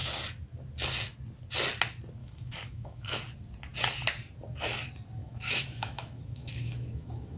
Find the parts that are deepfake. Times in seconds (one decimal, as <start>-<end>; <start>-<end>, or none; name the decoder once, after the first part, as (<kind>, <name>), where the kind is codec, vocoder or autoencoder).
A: 2.2-3.2 (autoencoder, DAC-VAE); 5.2-7.4